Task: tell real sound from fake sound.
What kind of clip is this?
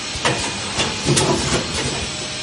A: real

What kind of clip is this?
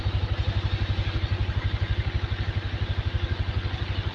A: real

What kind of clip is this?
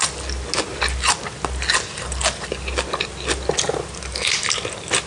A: real